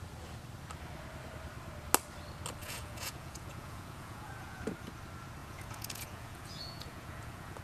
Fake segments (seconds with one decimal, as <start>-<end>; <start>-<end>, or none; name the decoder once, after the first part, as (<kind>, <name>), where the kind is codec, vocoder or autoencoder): 2.6-4.6 (vocoder, Vocos); 5.4-7.6